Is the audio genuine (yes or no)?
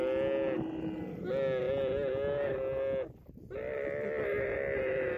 yes